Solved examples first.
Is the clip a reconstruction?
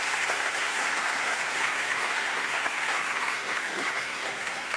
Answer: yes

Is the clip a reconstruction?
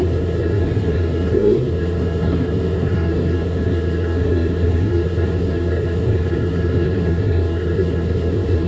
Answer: yes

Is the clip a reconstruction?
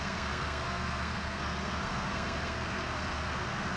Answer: yes